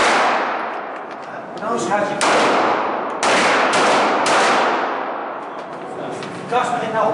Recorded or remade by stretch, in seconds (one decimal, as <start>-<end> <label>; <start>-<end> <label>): 0.0-7.1 recorded